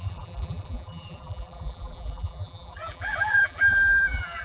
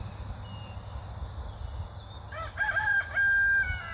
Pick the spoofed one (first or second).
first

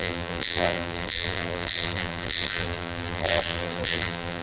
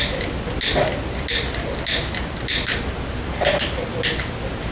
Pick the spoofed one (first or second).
first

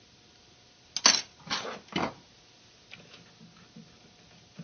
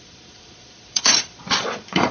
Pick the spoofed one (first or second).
second